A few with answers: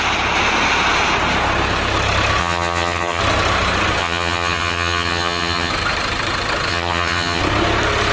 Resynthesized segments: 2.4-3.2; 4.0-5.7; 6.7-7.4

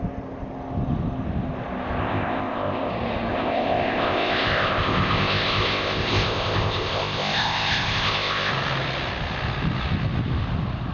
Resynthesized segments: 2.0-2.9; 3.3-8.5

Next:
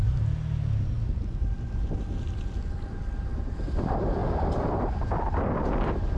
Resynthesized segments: none

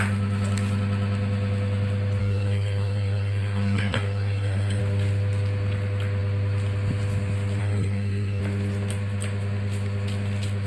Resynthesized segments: 2.2-4.8; 7.6-8.4

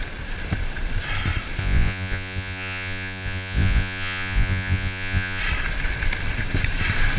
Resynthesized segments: 1.6-5.4